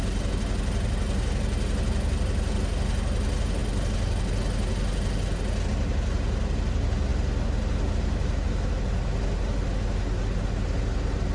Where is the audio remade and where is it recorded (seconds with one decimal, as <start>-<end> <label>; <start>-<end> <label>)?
0.0-11.3 recorded